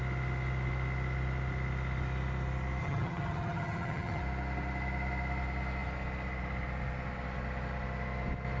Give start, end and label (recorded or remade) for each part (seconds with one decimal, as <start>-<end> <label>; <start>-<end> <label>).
0.0-2.8 recorded; 2.8-4.2 remade; 4.2-8.6 recorded